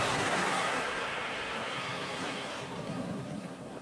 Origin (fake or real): fake